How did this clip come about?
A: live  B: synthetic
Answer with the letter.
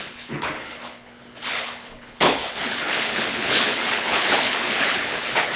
B